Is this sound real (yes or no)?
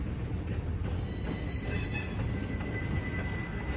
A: yes